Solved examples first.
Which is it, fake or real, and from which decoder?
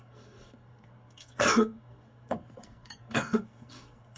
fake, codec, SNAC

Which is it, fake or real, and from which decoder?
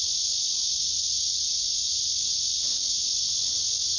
real